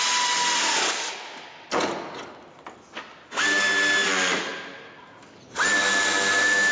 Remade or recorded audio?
recorded